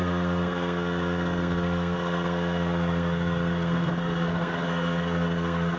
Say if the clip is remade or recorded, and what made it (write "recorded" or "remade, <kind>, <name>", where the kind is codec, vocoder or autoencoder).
remade, codec, SNAC